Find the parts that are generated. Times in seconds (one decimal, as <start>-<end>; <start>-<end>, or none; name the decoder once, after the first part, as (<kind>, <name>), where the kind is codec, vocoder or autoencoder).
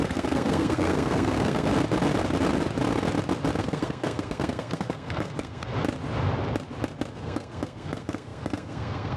0.0-1.7 (codec, SNAC); 3.6-5.7; 7.1-9.2